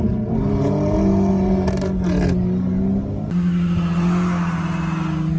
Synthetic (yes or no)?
no